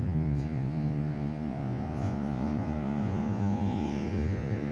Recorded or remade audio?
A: remade